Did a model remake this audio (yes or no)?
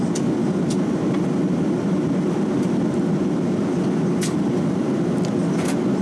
no